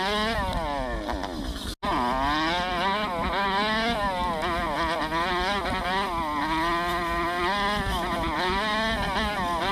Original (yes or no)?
yes